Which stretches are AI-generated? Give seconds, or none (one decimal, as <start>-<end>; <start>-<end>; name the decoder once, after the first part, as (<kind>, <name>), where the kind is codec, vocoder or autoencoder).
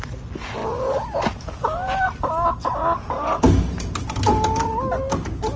none